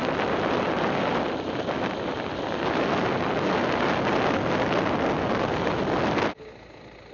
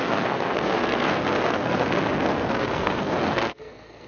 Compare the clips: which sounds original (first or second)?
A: first